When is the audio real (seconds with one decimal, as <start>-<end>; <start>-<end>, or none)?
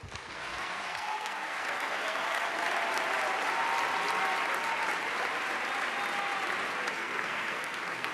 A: 2.6-6.9